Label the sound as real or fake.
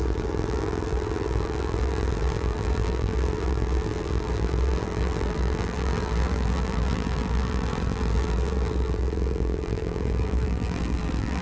fake